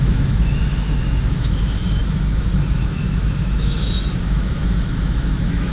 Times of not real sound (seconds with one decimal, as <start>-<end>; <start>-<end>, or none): 0.0-5.7